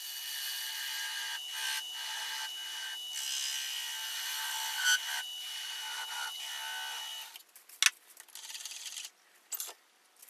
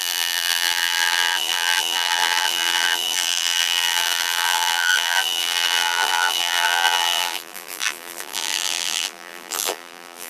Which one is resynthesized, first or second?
second